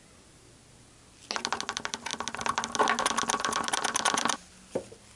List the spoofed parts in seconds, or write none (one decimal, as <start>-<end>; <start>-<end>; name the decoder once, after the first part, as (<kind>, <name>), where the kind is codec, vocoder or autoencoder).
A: none